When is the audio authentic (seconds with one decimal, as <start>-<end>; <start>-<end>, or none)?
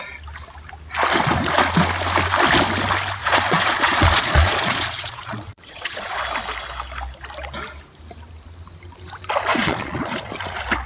0.0-3.2; 6.2-9.5; 10.3-10.9